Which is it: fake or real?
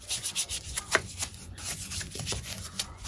fake